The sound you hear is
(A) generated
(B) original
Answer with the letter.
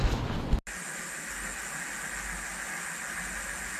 B